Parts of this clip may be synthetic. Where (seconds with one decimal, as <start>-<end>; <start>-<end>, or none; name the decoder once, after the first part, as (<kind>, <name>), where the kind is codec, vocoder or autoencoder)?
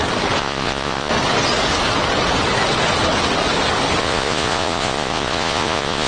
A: 0.4-1.1 (vocoder, Vocos); 4.0-6.1